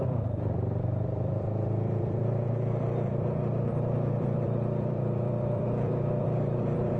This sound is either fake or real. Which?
fake